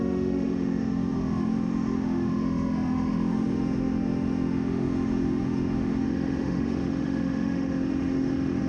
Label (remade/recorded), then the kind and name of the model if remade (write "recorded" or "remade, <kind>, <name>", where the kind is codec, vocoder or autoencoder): remade, autoencoder, DAC-VAE